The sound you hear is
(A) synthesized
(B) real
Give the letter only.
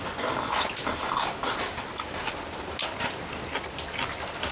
B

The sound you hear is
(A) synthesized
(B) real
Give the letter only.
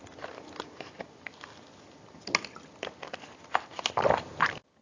B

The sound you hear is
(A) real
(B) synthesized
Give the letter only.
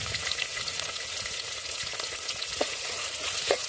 B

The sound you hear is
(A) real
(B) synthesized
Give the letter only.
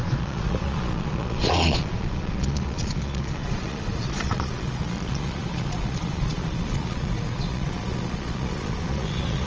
B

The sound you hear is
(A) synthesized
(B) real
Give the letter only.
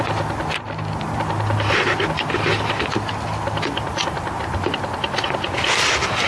B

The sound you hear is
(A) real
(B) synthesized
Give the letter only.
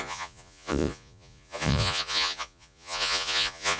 B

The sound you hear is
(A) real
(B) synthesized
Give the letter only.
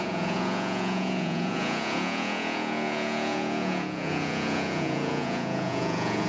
B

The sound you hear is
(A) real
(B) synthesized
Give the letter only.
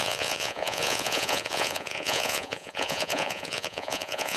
B